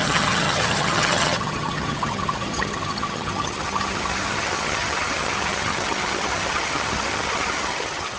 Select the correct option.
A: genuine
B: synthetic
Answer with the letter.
B